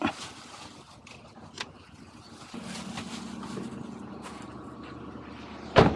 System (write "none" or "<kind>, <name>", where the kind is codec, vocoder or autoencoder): none